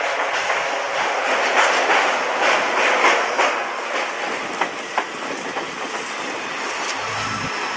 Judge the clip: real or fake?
real